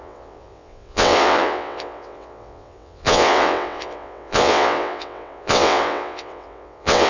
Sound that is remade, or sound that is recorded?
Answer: remade